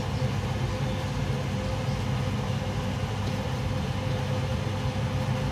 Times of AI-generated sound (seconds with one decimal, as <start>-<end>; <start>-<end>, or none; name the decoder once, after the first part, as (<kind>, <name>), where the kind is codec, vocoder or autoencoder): none